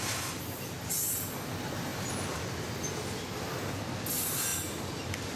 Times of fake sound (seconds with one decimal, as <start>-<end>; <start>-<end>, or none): 4.5-5.4